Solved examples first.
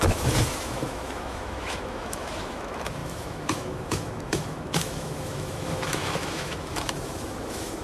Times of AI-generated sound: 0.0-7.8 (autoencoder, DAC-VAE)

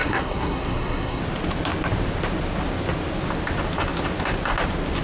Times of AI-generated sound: 0.0-1.2 (codec, SNAC)

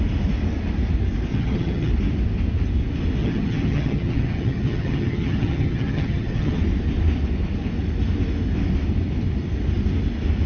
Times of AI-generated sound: 1.3-1.9 (vocoder, HiFi-GAN); 3.2-6.6